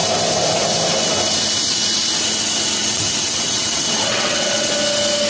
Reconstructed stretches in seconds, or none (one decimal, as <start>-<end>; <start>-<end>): 2.8-4.7